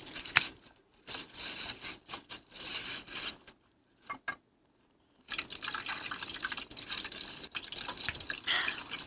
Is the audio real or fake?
real